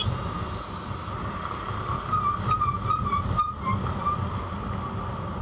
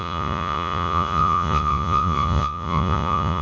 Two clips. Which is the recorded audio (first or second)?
first